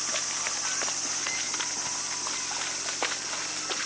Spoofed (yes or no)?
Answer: no